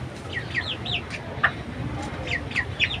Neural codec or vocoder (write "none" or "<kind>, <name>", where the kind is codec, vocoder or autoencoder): none